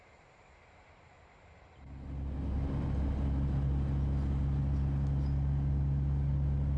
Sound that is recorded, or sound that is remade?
recorded